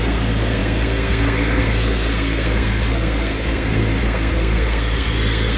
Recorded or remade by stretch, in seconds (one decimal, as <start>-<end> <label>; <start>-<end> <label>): 0.0-5.6 remade